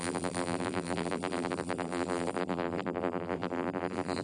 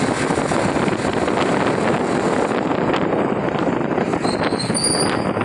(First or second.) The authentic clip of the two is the second